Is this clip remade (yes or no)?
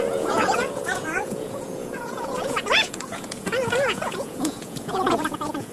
yes